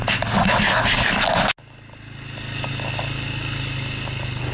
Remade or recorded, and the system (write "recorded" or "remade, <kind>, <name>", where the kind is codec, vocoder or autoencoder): recorded